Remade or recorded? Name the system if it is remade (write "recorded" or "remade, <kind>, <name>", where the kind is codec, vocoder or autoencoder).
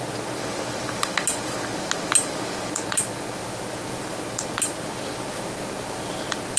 recorded